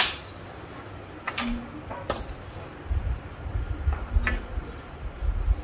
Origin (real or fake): real